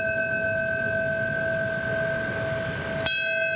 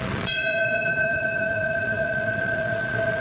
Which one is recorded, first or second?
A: first